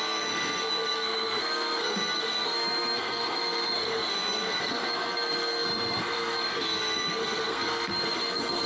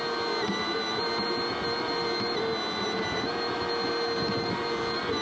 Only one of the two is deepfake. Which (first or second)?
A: first